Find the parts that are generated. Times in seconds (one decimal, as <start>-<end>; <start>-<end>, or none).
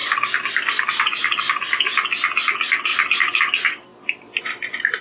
none